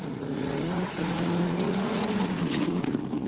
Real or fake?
fake